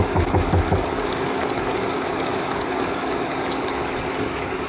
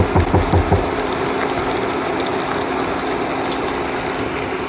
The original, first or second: second